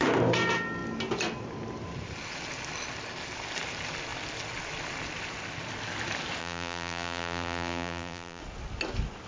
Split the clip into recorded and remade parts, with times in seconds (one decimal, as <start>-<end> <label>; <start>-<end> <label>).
0.0-6.4 recorded; 6.4-8.4 remade; 8.4-9.3 recorded